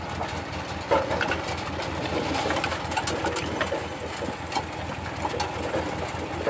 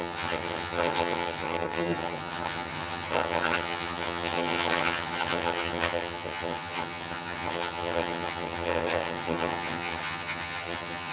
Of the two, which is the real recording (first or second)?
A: first